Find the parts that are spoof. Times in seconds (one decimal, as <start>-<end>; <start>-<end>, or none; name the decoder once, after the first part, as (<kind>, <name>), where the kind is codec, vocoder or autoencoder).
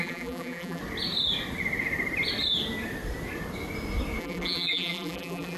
0.0-0.8 (vocoder, BigVGAN v2); 4.2-5.6